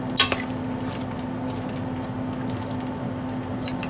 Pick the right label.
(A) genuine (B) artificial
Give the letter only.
A